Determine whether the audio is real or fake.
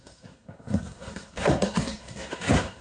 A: fake